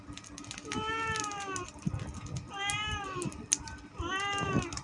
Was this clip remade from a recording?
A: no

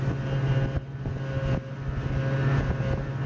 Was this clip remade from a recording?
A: no